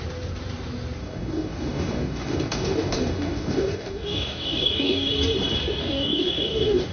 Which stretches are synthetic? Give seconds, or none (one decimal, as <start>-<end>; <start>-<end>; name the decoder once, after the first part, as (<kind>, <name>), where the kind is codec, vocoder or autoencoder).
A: 1.0-5.1 (codec, DAC); 5.8-6.9

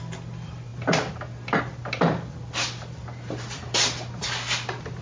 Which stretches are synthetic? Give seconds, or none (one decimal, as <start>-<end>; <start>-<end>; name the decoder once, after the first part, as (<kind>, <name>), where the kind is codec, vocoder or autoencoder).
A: none

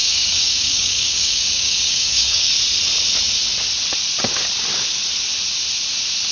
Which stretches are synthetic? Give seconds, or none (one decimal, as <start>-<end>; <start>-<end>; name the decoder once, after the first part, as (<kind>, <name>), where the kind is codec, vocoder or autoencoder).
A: 0.0-2.5 (codec, DAC)

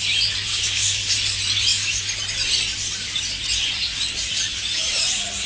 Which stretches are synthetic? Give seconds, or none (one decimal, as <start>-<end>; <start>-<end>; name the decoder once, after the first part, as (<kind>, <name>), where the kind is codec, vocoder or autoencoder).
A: 0.5-1.1 (codec, DAC)

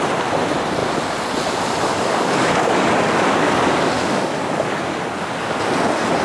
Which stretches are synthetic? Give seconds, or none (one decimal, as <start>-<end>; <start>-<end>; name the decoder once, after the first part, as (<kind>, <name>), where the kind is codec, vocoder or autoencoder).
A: 1.9-5.6 (codec, DAC)

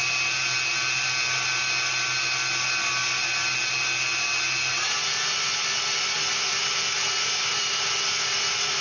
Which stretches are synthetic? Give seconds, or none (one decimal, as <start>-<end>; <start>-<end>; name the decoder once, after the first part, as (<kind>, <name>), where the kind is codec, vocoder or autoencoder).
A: none

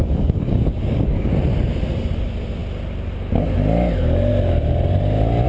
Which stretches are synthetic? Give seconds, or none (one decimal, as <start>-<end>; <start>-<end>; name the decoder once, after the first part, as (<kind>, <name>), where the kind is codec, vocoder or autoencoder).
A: 0.0-1.3 (codec, DAC)